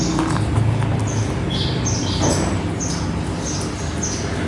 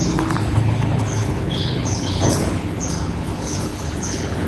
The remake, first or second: second